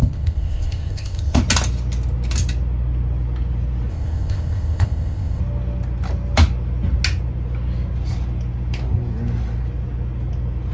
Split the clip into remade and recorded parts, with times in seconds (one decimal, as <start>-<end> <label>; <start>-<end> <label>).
0.0-1.4 remade; 1.4-3.9 recorded; 3.9-5.4 remade; 5.4-10.7 recorded

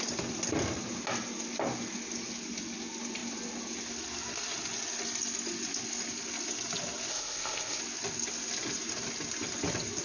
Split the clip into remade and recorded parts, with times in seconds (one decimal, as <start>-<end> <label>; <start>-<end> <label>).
0.0-7.1 recorded; 7.1-7.8 remade; 7.8-10.0 recorded